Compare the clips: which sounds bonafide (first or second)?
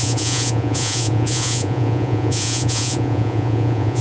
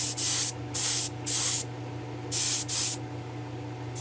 second